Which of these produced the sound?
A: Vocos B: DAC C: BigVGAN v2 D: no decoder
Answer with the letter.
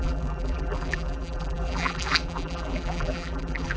C